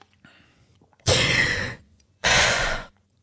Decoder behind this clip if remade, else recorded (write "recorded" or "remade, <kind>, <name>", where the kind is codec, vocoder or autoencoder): remade, vocoder, Vocos